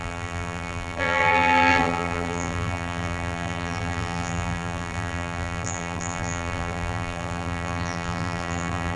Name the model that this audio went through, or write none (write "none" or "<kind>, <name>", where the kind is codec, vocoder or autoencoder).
vocoder, BigVGAN v2